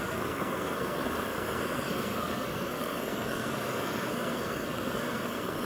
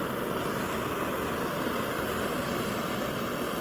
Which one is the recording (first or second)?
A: second